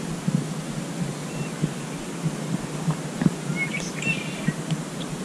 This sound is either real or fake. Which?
real